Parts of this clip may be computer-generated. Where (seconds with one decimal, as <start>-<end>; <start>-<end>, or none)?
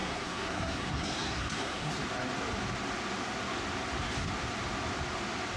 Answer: 0.0-1.9